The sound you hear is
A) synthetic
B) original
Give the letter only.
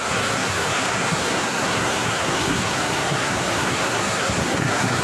A